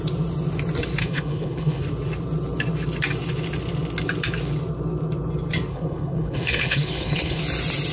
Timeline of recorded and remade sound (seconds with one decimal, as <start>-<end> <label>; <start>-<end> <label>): 0.0-1.0 recorded; 1.0-1.8 remade; 1.8-5.7 recorded; 5.7-7.4 remade; 7.4-7.9 recorded